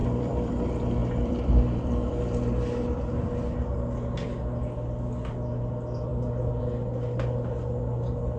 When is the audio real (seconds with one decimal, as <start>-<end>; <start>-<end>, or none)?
0.5-1.0; 3.1-8.4